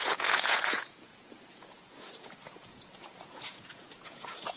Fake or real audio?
fake